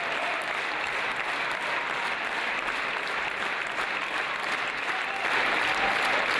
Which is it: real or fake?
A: fake